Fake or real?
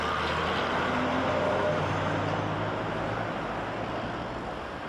real